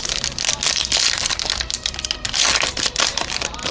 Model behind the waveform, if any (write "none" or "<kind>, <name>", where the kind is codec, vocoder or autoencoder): none